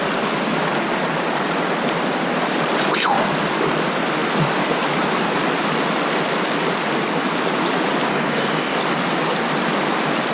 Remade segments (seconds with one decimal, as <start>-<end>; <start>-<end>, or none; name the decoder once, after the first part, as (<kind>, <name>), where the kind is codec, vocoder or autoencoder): 8.1-8.8 (codec, DAC)